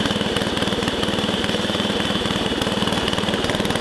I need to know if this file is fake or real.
fake